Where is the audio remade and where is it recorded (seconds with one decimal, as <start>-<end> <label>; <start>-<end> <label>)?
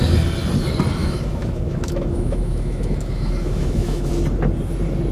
0.0-1.0 recorded; 1.0-4.1 remade; 4.1-5.1 recorded